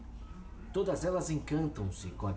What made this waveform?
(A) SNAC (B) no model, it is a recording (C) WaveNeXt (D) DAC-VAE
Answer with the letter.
B